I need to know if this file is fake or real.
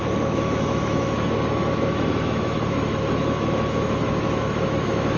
fake